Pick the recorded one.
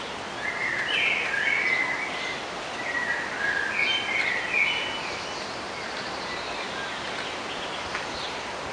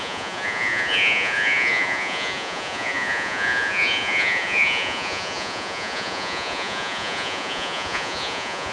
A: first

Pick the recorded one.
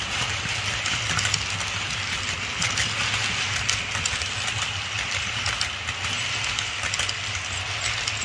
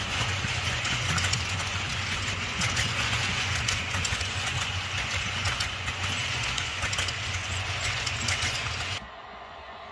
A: first